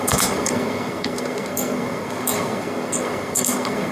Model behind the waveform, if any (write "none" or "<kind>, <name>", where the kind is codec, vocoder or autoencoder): codec, SNAC